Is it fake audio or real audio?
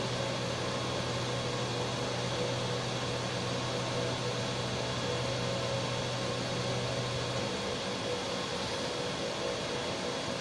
real